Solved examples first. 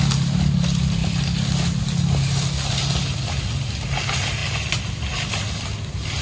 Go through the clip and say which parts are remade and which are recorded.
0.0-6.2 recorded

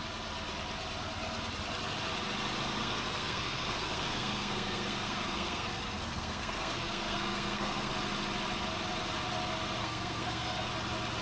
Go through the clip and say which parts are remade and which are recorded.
0.0-2.8 recorded; 2.8-7.9 remade; 7.9-9.8 recorded; 9.8-10.7 remade; 10.7-11.2 recorded

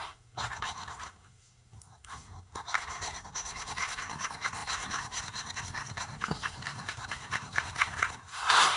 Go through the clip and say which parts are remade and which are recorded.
0.0-8.8 remade

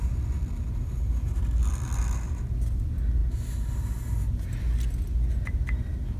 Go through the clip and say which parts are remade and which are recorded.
0.0-6.2 recorded

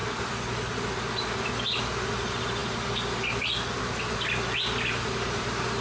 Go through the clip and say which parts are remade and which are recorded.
0.0-5.8 recorded